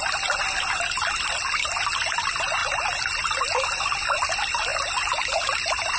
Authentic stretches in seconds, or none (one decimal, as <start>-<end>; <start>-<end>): 0.0-6.0